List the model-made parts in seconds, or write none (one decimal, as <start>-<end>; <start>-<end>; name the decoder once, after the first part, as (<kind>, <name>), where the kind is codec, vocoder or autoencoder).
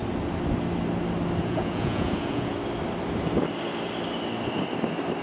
1.4-2.5 (vocoder, Vocos)